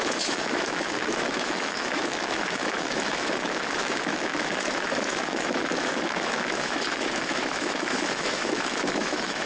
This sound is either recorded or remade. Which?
remade